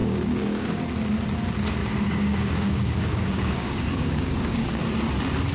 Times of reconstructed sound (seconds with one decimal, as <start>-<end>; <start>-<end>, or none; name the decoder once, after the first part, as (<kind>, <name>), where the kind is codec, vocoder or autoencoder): 0.0-0.8 (codec, DAC); 1.8-4.8